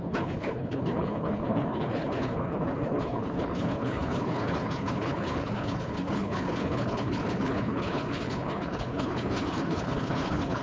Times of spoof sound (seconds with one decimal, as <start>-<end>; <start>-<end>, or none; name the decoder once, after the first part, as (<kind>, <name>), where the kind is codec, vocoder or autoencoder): 0.0-10.6 (codec, HILCodec)

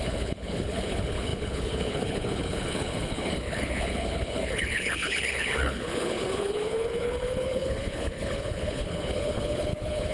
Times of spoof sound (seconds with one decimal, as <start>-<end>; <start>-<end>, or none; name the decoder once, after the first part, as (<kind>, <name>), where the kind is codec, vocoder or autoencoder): 0.0-10.1 (codec, HILCodec)